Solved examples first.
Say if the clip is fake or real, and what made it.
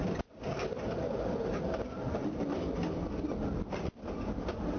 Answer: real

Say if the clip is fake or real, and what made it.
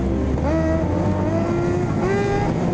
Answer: real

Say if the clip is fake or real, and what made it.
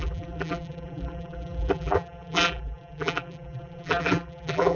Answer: fake, vocoder, BigVGAN v2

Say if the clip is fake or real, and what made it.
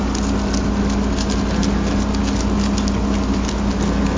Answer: real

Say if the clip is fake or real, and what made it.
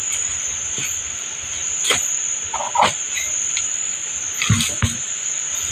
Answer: real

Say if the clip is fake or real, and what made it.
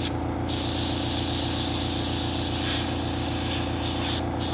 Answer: real